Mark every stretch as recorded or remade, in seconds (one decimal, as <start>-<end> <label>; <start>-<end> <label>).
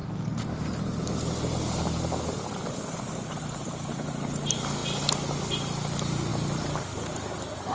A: 0.0-3.3 recorded; 3.3-4.8 remade; 4.8-5.7 recorded; 5.7-7.7 remade